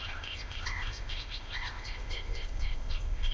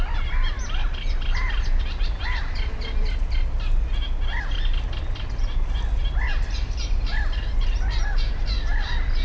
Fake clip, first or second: first